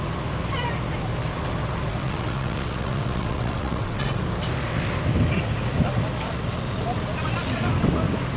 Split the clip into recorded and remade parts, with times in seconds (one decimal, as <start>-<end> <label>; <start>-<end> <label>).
0.0-2.0 recorded; 2.0-4.2 remade; 4.2-8.4 recorded